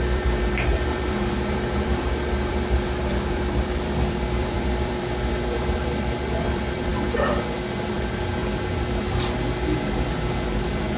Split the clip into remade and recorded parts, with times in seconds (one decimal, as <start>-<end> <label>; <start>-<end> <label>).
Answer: 0.0-6.9 remade; 6.9-7.9 recorded; 7.9-8.4 remade; 8.4-11.0 recorded